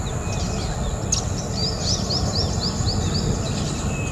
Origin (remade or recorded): recorded